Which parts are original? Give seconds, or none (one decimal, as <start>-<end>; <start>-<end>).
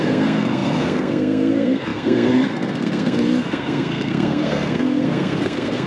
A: none